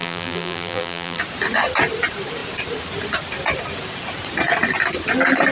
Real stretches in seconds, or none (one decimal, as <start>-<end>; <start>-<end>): 1.2-5.5